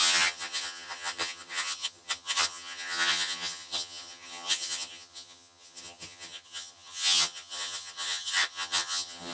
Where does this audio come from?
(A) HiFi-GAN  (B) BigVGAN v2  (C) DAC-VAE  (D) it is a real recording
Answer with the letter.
A